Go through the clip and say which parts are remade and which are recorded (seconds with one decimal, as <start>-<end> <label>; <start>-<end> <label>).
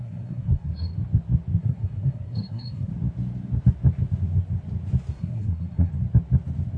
0.0-0.9 remade; 0.9-1.6 recorded; 1.6-2.9 remade; 2.9-5.1 recorded; 5.1-5.9 remade; 5.9-6.8 recorded